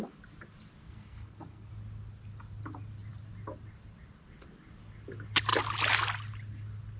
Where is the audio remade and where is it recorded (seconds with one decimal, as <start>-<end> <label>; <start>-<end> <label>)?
0.0-0.8 recorded; 0.8-1.7 remade; 1.7-7.0 recorded